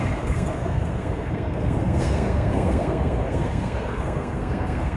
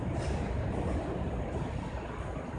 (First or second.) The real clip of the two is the second